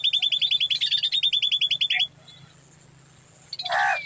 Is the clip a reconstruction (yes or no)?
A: no